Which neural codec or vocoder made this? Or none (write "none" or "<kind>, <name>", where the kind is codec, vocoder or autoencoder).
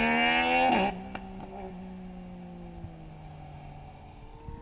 none